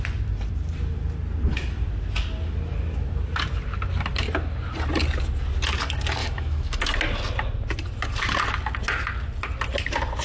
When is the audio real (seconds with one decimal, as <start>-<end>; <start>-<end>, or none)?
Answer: 0.0-6.2; 6.8-10.2